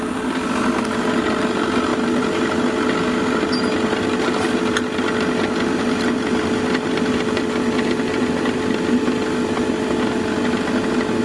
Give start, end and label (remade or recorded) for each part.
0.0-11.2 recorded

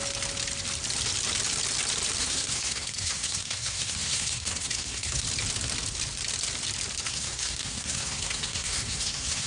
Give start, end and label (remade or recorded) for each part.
0.0-2.2 recorded; 2.2-5.2 remade; 5.2-7.1 recorded; 7.1-9.5 remade

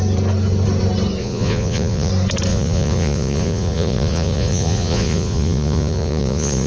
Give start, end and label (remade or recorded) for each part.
0.0-1.2 recorded; 1.2-2.1 remade; 2.1-2.5 recorded; 2.5-6.7 remade